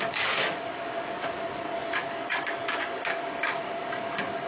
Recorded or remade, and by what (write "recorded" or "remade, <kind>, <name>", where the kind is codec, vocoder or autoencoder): remade, codec, DAC